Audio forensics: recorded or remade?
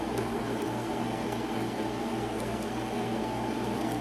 remade